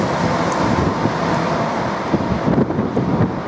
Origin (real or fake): real